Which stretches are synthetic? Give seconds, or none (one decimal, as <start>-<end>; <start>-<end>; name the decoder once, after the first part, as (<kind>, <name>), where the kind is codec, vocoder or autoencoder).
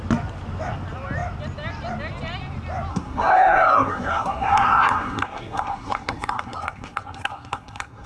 2.9-8.1 (codec, SNAC)